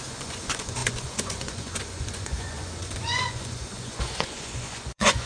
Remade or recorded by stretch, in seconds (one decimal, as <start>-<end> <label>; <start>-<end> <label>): 0.0-5.3 remade